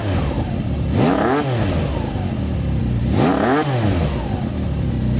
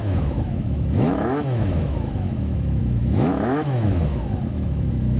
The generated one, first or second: second